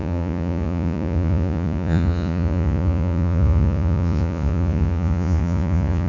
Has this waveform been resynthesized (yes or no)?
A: yes